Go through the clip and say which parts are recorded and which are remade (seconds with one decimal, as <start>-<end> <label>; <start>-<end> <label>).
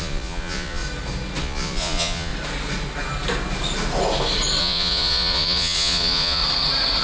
0.0-0.8 remade; 0.8-1.4 recorded; 1.4-2.3 remade; 2.3-4.6 recorded; 4.6-6.4 remade; 6.4-7.0 recorded